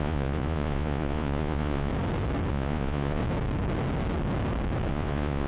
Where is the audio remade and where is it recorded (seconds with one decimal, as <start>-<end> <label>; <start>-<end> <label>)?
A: 0.0-1.9 remade; 1.9-2.5 recorded; 2.5-3.2 remade; 3.2-4.9 recorded; 4.9-5.5 remade